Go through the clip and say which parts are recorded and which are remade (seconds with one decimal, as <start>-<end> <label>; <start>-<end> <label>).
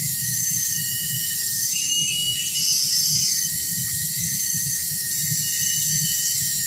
0.0-2.4 remade; 2.4-3.9 recorded; 3.9-5.1 remade; 5.1-5.8 recorded; 5.8-6.7 remade